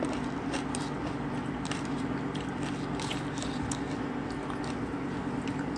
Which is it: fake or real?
real